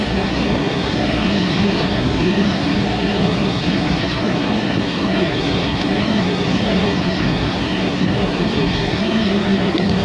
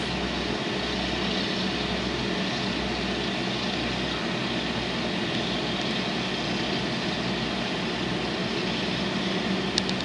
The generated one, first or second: first